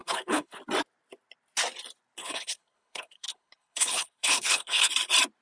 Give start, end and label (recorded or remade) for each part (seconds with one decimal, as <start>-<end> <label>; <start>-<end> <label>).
0.0-0.6 remade; 0.6-2.2 recorded; 2.2-4.9 remade; 4.9-5.4 recorded